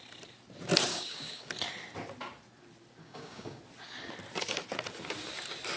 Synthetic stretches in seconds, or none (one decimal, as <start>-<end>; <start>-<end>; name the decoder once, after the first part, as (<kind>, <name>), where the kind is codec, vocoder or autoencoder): 0.9-1.5 (codec, DAC); 3.0-3.6